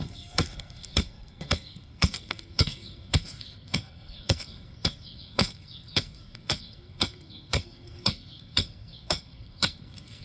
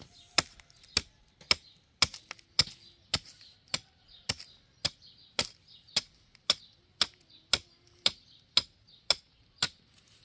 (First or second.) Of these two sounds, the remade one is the first